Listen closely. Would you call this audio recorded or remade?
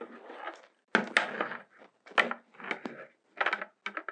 recorded